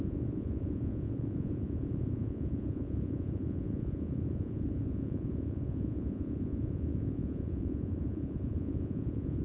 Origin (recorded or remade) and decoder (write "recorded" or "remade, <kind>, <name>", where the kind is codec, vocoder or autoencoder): remade, vocoder, Vocos